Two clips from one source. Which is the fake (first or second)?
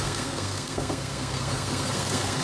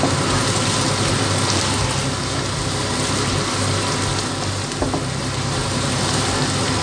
first